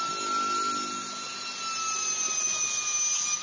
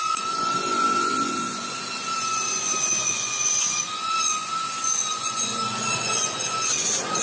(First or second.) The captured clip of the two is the first